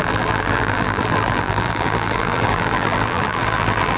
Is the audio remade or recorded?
remade